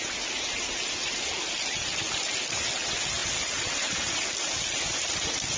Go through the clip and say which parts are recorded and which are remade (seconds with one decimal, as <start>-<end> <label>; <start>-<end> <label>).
0.0-5.6 recorded